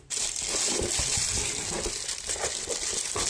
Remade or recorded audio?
recorded